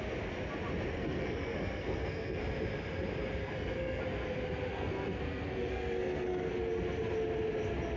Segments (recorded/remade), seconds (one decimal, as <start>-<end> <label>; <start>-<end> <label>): 0.0-0.9 recorded; 0.9-2.4 remade; 2.4-3.4 recorded; 3.4-4.0 remade; 4.0-4.7 recorded; 4.7-6.5 remade; 6.5-8.0 recorded